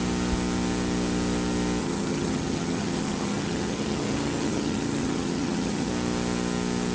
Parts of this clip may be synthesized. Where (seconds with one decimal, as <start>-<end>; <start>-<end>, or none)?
1.8-5.9